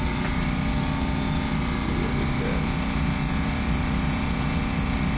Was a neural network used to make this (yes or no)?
no